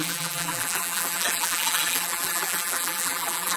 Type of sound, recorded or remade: remade